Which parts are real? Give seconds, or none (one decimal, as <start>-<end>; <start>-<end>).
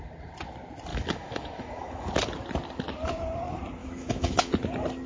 0.0-0.9; 2.1-3.8; 4.5-5.1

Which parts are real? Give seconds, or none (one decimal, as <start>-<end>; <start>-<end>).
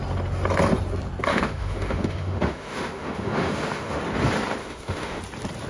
0.0-1.3; 4.0-4.6; 5.2-5.7